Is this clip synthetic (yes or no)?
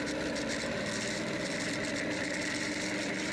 no